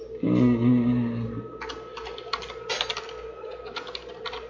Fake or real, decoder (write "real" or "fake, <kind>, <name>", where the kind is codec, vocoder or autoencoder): real